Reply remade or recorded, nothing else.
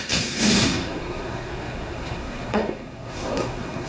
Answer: remade